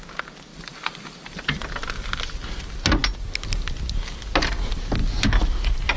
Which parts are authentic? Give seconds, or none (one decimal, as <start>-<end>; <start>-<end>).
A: 0.0-0.5; 1.4-6.0